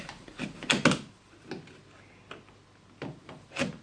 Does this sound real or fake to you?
real